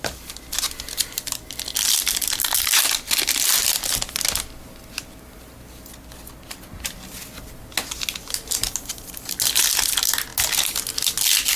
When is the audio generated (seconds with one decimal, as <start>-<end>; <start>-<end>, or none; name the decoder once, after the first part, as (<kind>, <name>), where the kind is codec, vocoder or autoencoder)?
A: none